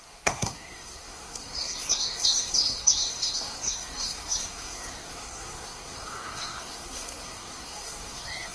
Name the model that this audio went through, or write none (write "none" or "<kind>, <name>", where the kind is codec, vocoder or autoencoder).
codec, SNAC